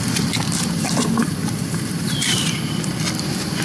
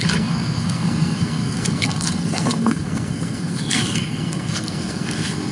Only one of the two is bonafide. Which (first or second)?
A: first